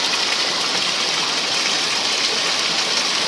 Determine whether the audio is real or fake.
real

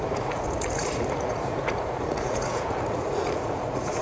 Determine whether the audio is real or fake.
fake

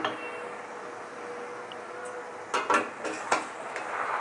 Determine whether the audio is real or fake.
real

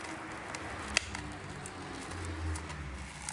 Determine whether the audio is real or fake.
real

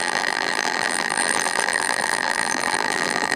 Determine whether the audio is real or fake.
fake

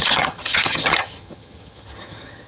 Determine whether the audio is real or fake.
fake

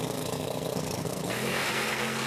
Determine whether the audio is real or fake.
fake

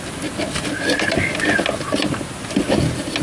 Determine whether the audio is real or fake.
real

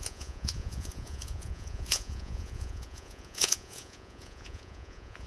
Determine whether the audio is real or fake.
fake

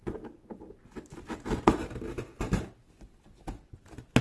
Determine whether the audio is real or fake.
real